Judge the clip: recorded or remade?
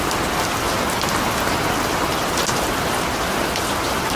recorded